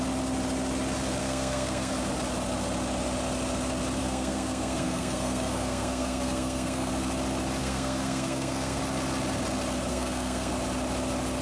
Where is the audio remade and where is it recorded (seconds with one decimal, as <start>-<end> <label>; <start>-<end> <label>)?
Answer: 0.0-1.2 recorded; 1.2-1.9 remade; 1.9-4.0 recorded; 4.0-6.9 remade; 6.9-7.6 recorded; 7.6-8.8 remade; 8.8-9.9 recorded; 9.9-10.5 remade; 10.5-11.4 recorded